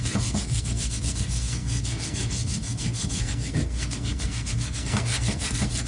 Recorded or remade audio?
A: remade